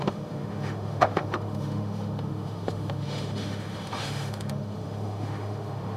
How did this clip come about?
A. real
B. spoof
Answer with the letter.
B